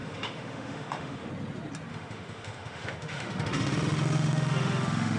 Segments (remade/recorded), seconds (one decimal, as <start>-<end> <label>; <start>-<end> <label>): 0.0-1.3 remade; 1.3-1.9 recorded; 1.9-5.2 remade